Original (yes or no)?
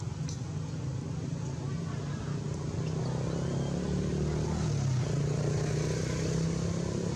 yes